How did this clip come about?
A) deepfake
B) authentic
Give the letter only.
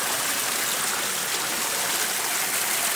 A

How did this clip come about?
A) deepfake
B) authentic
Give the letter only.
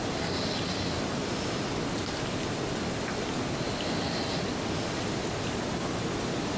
B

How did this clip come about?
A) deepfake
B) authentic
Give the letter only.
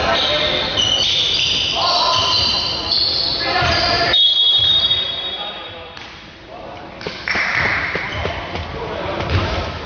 A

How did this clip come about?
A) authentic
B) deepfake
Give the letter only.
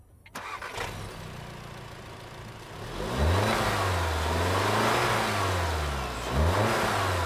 A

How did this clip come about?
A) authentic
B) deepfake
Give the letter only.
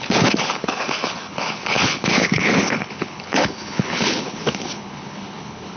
B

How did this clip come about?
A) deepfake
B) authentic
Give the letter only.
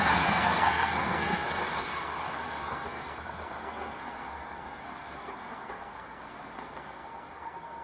A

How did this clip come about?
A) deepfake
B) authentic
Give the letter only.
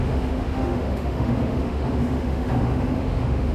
A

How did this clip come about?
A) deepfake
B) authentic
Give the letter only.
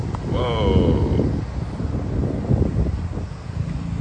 B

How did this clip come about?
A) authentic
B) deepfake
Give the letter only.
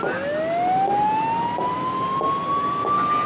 A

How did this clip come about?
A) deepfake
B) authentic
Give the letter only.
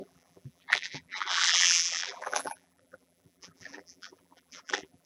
A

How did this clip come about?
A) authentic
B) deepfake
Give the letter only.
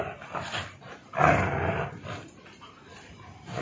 A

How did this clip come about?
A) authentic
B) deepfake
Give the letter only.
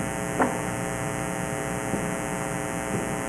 A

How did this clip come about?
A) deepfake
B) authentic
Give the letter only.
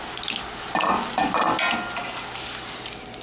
B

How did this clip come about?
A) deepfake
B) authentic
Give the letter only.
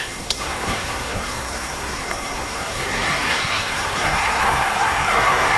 A